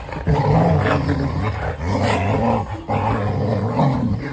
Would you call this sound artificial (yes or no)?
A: no